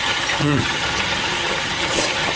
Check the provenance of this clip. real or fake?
fake